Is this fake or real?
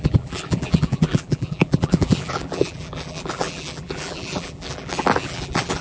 fake